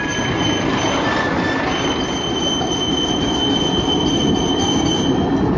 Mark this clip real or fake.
real